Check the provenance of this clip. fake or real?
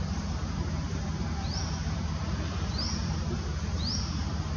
fake